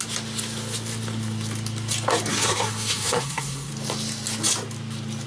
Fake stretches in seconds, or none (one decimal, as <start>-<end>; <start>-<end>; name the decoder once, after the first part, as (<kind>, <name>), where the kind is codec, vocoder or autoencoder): 2.3-3.7 (codec, SNAC)